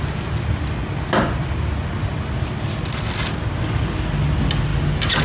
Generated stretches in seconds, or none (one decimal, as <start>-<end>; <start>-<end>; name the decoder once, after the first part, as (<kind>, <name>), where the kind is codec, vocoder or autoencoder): none